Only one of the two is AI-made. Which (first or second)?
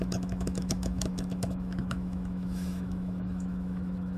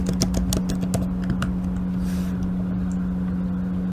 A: first